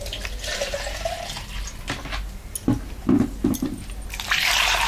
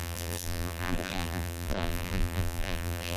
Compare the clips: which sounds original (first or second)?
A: first